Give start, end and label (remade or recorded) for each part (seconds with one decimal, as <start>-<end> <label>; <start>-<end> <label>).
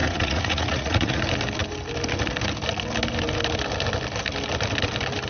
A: 0.0-1.2 remade; 1.2-5.3 recorded